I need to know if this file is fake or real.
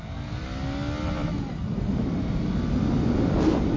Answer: real